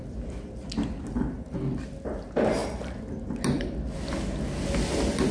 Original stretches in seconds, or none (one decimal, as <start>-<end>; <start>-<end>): 0.0-5.3